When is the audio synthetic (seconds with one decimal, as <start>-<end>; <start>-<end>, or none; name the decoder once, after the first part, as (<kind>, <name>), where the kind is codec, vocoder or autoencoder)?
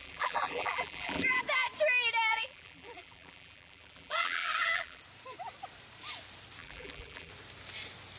0.0-1.4 (vocoder, BigVGAN v2); 2.3-5.0; 6.6-7.3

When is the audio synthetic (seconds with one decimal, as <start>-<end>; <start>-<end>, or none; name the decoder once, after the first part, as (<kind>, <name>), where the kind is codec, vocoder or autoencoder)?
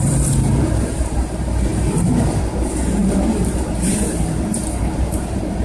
0.0-5.6 (vocoder, BigVGAN v2)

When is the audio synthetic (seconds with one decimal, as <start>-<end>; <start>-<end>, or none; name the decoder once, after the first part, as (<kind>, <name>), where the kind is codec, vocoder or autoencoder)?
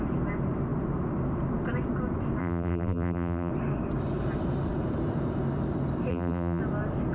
2.4-3.5 (vocoder, BigVGAN v2); 6.1-6.6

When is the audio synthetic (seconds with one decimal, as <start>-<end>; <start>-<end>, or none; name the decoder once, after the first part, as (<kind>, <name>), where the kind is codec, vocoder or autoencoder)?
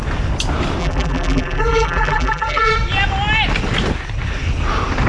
0.8-2.7 (vocoder, BigVGAN v2)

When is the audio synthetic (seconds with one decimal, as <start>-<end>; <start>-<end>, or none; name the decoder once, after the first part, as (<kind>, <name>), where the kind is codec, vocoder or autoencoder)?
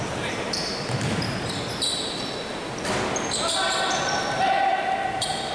0.0-0.7 (vocoder, BigVGAN v2); 4.0-4.7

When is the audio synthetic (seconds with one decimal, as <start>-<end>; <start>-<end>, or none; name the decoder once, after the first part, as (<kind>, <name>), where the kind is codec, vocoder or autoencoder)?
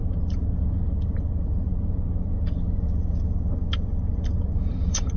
0.0-1.7 (vocoder, BigVGAN v2); 4.1-5.2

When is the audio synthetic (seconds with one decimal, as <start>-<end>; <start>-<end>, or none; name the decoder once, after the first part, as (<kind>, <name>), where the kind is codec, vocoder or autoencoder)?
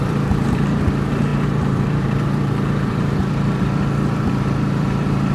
0.0-5.3 (vocoder, BigVGAN v2)